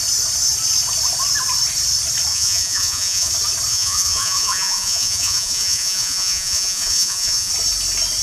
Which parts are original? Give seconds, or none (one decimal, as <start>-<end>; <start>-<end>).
0.0-2.3; 3.3-3.7; 7.5-8.2